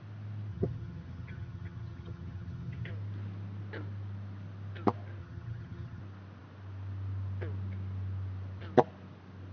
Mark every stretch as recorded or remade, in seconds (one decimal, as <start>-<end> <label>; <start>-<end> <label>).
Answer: 0.0-0.5 recorded; 0.5-2.9 remade; 2.9-5.2 recorded; 5.2-6.0 remade; 6.0-9.5 recorded